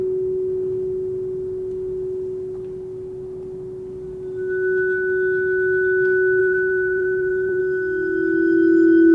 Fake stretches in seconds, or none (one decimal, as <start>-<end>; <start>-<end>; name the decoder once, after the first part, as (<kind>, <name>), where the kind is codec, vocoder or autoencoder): 6.4-7.6 (vocoder, BigVGAN v2)